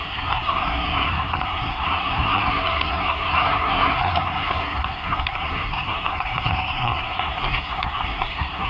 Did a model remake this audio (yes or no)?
yes